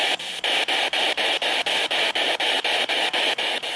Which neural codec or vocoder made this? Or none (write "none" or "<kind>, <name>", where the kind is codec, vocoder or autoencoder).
none